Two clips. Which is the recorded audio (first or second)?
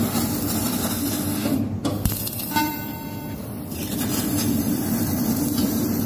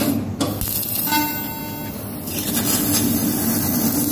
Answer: second